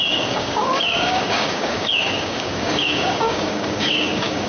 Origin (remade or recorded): remade